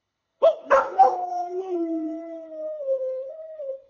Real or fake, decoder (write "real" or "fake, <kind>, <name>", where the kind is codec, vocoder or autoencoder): fake, codec, HILCodec